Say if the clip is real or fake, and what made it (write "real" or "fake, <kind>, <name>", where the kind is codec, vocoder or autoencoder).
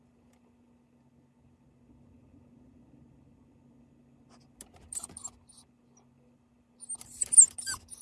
real